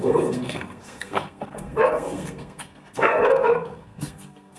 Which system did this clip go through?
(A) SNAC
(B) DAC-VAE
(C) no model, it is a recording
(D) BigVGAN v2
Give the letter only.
A